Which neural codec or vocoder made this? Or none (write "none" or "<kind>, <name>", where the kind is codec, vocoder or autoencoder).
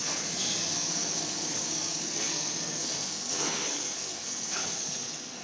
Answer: codec, SNAC